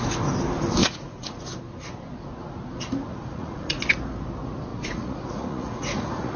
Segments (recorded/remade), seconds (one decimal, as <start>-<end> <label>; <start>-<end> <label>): 0.0-0.8 recorded; 0.8-1.4 remade; 1.4-3.1 recorded; 3.1-3.8 remade; 3.8-4.7 recorded; 4.7-6.4 remade